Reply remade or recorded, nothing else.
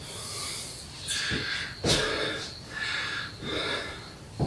recorded